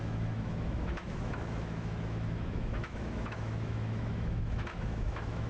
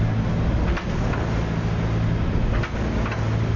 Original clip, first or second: second